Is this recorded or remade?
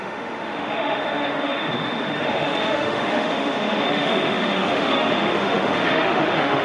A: remade